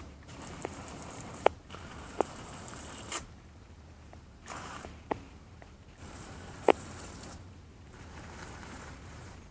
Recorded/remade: remade